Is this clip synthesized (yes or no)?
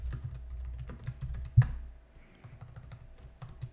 no